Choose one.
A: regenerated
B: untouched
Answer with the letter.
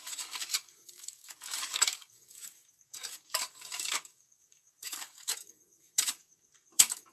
A